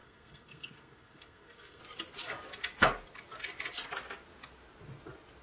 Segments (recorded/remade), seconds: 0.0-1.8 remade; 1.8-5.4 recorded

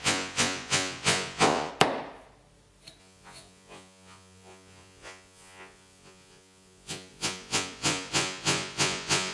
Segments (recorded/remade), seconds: 0.0-1.7 remade; 1.7-3.0 recorded; 3.0-9.3 remade

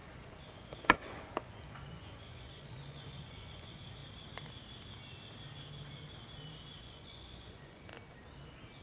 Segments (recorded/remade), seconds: 0.0-4.0 remade; 4.0-6.8 recorded; 6.8-7.9 remade; 7.9-8.8 recorded

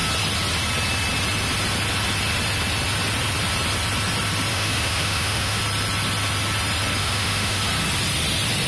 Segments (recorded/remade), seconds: 0.0-4.5 recorded; 4.5-5.6 remade; 5.6-7.0 recorded; 7.0-7.6 remade; 7.6-8.7 recorded

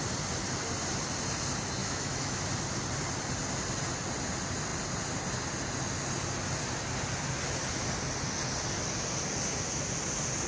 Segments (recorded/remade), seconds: 0.0-1.8 recorded; 1.8-2.4 remade; 2.4-10.5 recorded

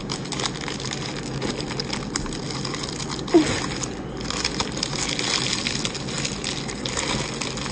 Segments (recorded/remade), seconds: 0.0-7.7 recorded

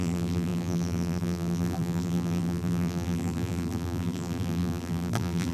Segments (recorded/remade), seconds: 0.0-5.5 remade